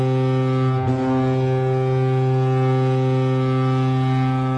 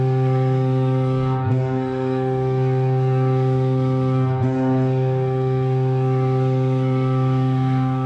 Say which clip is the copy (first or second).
second